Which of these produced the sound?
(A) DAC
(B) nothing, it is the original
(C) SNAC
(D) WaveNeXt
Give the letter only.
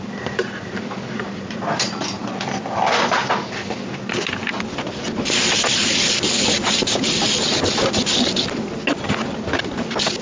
B